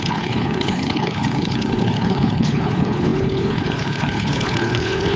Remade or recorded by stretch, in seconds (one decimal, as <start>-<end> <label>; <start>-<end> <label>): 0.0-5.2 remade